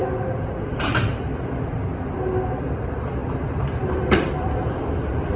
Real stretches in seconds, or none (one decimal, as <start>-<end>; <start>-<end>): 0.0-0.7; 1.8-2.8